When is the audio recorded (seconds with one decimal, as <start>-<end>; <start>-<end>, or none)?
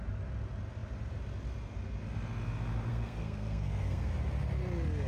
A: 0.0-2.9; 4.1-5.1